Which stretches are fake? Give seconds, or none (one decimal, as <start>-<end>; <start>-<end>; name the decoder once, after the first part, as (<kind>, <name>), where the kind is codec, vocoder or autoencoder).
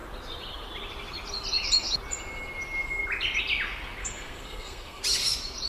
4.0-5.0 (codec, SNAC)